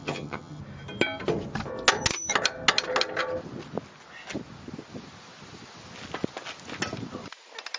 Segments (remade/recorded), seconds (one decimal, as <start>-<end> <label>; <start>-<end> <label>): 0.0-0.6 remade; 0.6-7.8 recorded

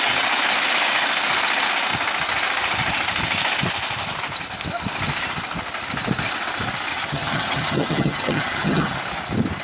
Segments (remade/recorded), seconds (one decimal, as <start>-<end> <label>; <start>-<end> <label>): 0.0-6.9 recorded; 6.9-9.0 remade; 9.0-9.6 recorded

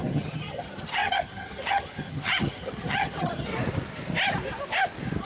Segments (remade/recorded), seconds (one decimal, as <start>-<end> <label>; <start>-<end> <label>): 0.0-3.5 remade; 3.5-5.2 recorded

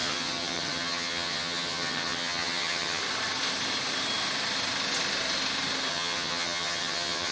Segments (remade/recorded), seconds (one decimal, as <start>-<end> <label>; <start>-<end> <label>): 0.0-3.0 remade; 3.0-5.9 recorded; 5.9-7.3 remade

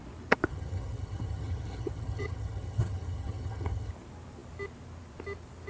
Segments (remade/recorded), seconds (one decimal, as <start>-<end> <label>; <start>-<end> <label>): 0.0-0.5 recorded; 0.5-3.9 remade; 3.9-5.7 recorded